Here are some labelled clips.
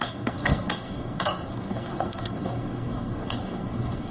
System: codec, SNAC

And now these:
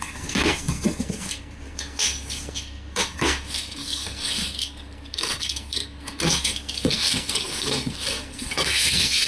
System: codec, SNAC